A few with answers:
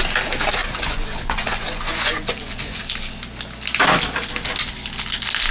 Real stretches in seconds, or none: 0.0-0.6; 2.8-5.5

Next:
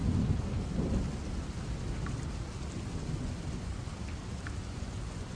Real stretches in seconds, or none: 0.0-3.2; 3.9-4.7

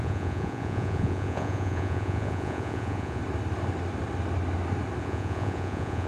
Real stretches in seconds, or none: 3.2-5.0

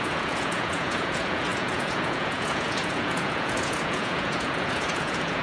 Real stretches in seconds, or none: none